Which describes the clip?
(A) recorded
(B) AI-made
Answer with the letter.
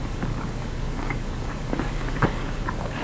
B